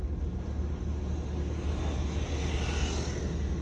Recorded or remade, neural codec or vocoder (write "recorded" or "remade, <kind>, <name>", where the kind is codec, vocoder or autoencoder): recorded